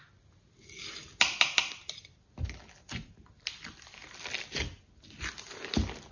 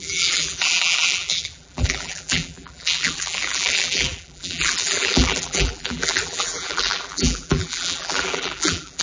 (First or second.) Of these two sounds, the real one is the first